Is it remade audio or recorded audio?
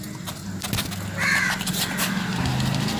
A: recorded